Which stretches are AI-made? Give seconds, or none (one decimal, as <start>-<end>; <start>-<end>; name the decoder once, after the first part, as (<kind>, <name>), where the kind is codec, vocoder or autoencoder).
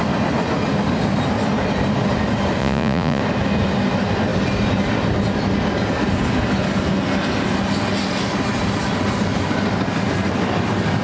2.6-3.2 (vocoder, Vocos)